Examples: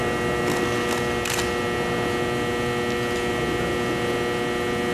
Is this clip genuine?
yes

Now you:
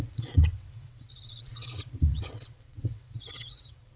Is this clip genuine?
no